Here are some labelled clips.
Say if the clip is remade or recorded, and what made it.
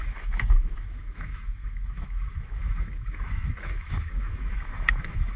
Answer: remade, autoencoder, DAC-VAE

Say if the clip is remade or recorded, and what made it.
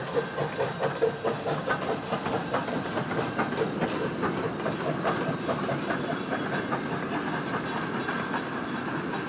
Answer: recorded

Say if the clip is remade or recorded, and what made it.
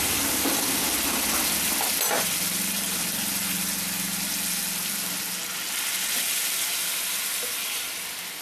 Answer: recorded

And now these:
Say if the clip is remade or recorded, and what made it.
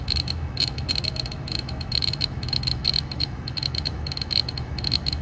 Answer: remade, autoencoder, DAC-VAE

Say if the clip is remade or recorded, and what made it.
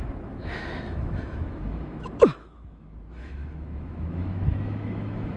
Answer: remade, autoencoder, DAC-VAE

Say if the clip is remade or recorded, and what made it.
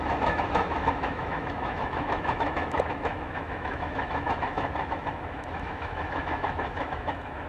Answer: remade, autoencoder, DAC-VAE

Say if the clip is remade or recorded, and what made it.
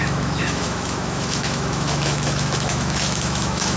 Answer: remade, autoencoder, DAC-VAE